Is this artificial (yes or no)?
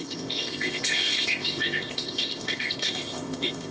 yes